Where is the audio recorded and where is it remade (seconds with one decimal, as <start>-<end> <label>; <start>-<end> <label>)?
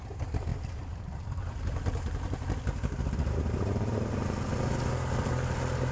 0.0-0.5 recorded; 0.5-3.5 remade; 3.5-5.9 recorded